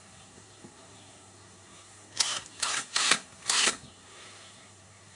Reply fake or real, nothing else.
fake